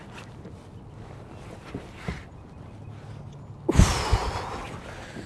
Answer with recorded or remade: recorded